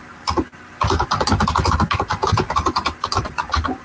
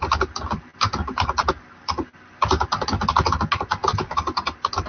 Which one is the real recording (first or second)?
second